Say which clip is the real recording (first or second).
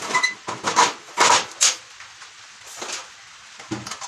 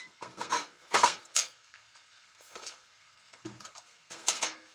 first